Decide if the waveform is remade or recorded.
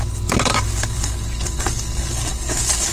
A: remade